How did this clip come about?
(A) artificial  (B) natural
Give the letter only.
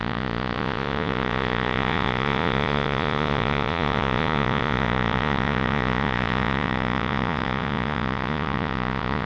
A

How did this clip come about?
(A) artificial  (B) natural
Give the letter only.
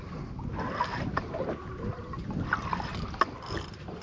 B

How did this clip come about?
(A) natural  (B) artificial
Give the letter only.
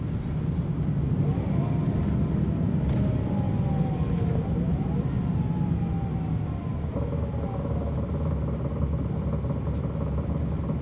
A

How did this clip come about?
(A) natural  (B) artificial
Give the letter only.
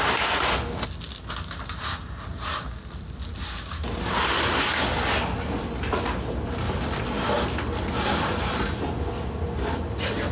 A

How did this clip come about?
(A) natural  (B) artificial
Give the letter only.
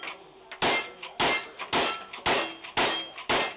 A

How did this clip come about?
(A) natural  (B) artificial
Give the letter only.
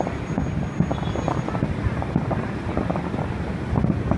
A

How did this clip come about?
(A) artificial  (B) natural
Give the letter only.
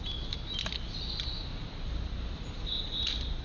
B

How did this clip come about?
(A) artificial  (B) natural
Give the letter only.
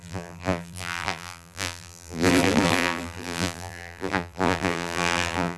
A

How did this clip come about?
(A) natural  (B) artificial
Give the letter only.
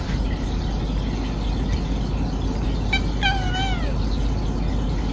A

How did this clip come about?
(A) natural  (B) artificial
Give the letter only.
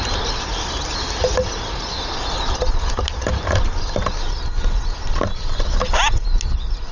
A